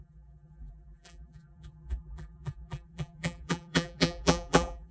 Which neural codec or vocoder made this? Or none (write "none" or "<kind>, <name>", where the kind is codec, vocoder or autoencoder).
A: vocoder, BigVGAN v2